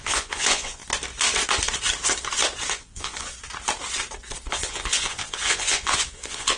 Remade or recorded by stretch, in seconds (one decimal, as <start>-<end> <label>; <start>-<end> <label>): 0.0-0.8 remade; 0.8-2.7 recorded; 2.7-3.3 remade; 3.3-4.5 recorded; 4.5-6.6 remade

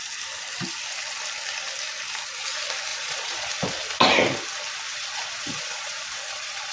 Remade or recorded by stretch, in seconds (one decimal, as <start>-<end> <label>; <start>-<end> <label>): 0.0-2.9 recorded; 2.9-3.5 remade; 3.5-4.9 recorded; 4.9-6.7 remade

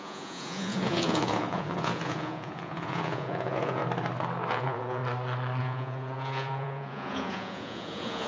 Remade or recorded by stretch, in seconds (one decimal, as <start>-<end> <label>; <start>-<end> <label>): 0.0-3.8 remade; 3.8-4.5 recorded; 4.5-5.0 remade; 5.0-5.6 recorded; 5.6-8.3 remade

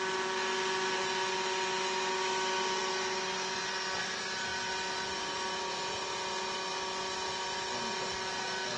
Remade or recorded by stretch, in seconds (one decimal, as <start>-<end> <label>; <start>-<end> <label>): 0.0-8.8 recorded

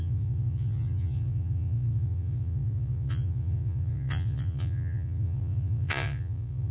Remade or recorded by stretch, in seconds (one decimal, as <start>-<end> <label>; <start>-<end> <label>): 0.0-6.7 remade

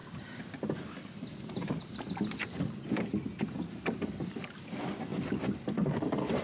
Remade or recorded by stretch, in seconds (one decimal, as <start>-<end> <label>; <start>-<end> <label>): 0.0-6.4 recorded